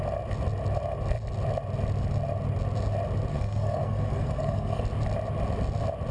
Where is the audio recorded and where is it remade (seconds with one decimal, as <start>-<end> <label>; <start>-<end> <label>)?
0.0-3.3 recorded; 3.3-4.8 remade; 4.8-6.1 recorded